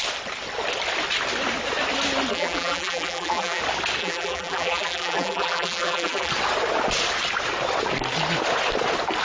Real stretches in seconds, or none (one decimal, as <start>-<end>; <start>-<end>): 0.0-2.3; 3.6-4.0; 6.3-9.2